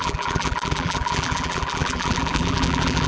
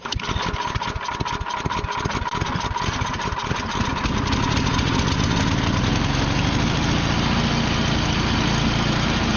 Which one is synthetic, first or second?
first